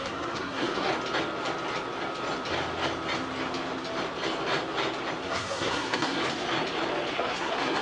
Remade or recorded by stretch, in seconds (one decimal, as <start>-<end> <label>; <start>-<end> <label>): 0.0-0.9 remade; 0.9-5.2 recorded; 5.2-6.2 remade; 6.2-7.1 recorded; 7.1-7.8 remade